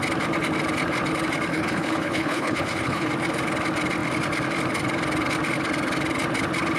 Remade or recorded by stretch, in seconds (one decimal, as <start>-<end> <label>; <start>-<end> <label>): 0.0-1.5 recorded; 1.5-3.1 remade; 3.1-6.8 recorded